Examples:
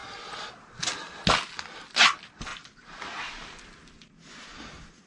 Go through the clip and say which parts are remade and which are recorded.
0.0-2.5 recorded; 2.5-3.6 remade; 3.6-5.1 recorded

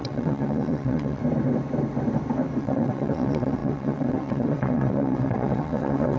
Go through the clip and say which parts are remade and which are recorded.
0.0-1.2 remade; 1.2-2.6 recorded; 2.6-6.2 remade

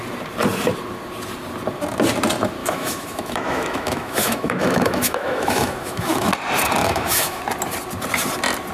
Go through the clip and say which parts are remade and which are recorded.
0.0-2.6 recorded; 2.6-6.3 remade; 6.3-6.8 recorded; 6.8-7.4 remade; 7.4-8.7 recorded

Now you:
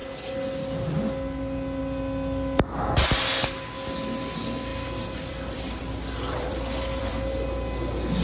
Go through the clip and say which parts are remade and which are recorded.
0.0-4.7 recorded; 4.7-7.1 remade; 7.1-8.2 recorded

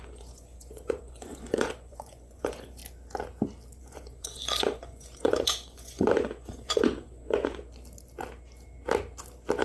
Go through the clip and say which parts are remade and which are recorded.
0.0-2.8 remade; 2.8-3.8 recorded; 3.8-7.6 remade; 7.6-9.6 recorded

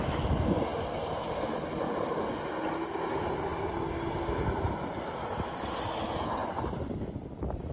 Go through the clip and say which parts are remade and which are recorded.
0.0-7.7 recorded

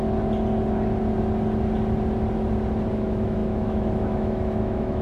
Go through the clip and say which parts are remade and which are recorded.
0.0-2.9 recorded; 2.9-5.0 remade